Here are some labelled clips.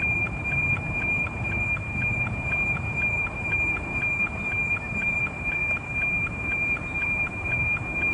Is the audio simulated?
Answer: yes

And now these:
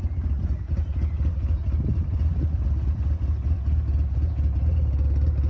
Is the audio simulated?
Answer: no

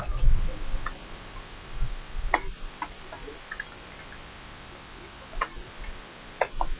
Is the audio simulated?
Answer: yes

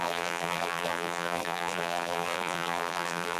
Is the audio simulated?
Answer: yes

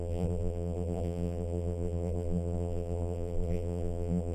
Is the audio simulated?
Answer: yes